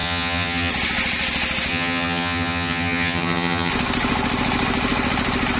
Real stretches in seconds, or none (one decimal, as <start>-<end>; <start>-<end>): 0.7-1.7; 3.7-5.6